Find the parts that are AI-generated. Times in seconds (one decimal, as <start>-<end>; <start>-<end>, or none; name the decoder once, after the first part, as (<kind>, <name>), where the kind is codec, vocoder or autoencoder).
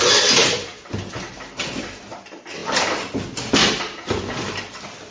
0.0-0.7 (vocoder, BigVGAN v2); 1.7-2.6